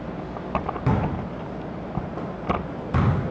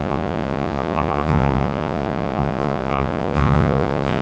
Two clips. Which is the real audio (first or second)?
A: first